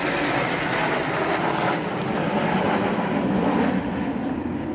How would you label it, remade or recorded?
recorded